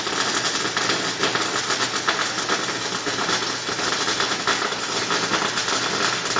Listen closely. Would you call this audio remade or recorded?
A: recorded